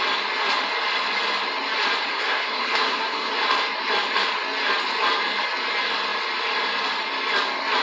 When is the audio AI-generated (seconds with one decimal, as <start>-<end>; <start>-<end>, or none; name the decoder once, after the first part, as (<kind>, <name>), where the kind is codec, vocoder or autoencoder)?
2.1-3.3 (codec, SNAC)